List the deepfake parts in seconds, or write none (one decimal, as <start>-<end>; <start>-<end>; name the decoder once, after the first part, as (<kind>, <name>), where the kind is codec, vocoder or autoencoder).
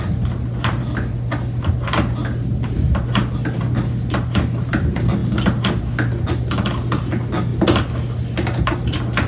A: none